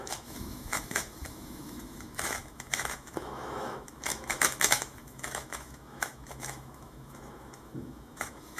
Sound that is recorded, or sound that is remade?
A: remade